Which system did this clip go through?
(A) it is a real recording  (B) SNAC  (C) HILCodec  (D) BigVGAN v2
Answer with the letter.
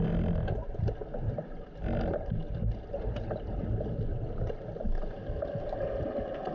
A